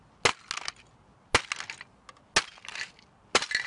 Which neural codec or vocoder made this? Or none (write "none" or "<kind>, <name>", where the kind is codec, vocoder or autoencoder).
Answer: none